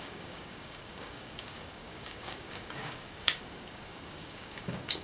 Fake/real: fake